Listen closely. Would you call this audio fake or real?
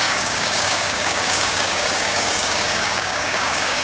fake